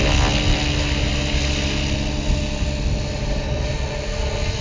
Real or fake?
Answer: real